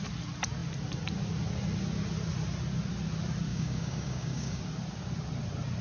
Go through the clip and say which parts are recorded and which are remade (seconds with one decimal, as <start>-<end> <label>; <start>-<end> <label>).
0.0-3.5 recorded; 3.5-4.6 remade; 4.6-5.8 recorded

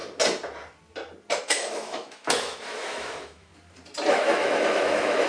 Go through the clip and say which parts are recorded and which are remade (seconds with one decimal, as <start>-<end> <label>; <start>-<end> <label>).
0.0-1.4 recorded; 1.4-3.5 remade; 3.5-4.1 recorded; 4.1-5.3 remade

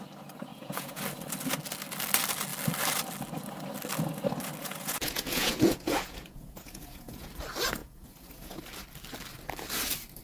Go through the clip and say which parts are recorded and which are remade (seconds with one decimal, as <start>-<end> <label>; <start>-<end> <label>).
0.0-0.5 recorded; 0.5-1.0 remade; 1.0-4.6 recorded; 4.6-7.3 remade; 7.3-7.8 recorded; 7.8-8.6 remade; 8.6-10.2 recorded